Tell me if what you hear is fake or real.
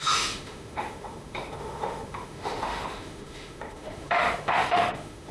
fake